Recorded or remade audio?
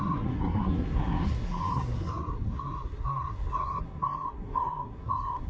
remade